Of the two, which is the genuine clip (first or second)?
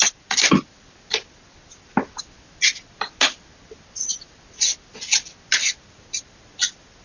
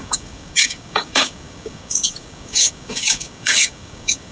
first